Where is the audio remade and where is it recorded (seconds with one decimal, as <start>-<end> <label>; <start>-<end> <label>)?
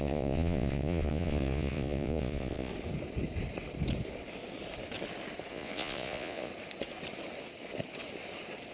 0.0-2.7 remade; 2.7-5.5 recorded; 5.5-6.5 remade; 6.5-8.7 recorded